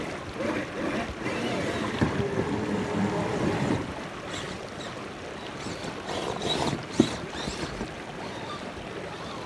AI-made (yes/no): no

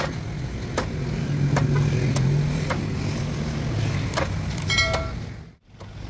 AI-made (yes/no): no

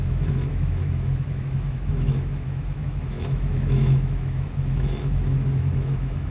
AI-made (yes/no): yes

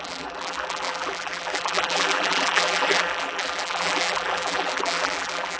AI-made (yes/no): yes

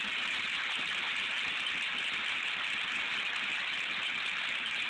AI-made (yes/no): yes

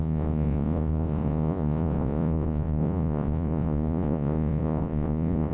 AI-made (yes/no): yes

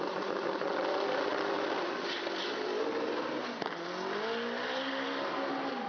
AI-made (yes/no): no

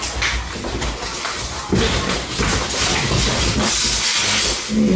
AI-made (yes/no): no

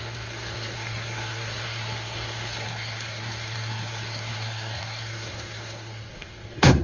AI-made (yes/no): yes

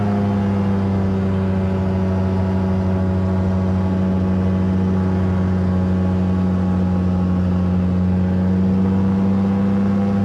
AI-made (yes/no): no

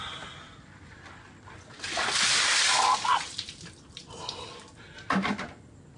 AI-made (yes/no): no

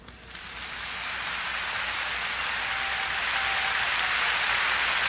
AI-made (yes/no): no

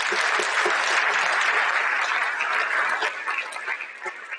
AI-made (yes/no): no